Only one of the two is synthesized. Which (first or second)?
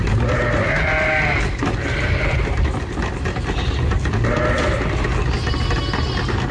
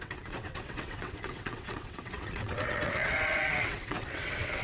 second